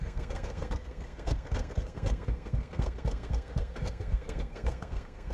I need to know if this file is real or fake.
fake